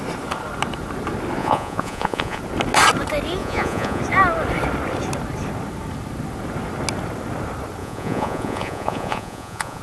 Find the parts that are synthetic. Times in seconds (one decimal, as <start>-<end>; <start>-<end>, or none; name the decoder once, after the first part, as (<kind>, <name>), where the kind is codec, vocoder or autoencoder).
1.4-2.4 (vocoder, Vocos); 3.4-4.0; 7.8-9.8